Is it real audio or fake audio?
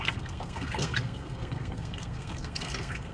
fake